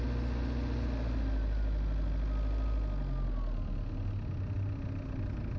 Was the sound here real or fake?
real